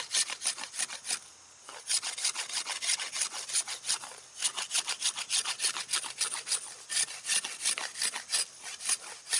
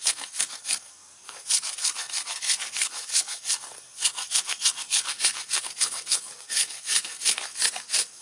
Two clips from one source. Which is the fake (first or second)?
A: second